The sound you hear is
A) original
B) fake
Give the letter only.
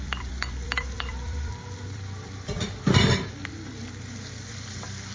B